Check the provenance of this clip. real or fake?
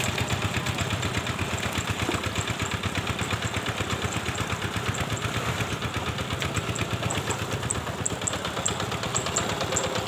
real